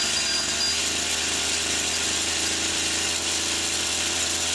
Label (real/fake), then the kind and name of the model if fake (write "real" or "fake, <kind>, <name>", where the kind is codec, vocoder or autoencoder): real